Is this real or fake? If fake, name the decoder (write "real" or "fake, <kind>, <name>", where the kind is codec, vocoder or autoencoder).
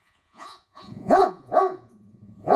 fake, vocoder, Vocos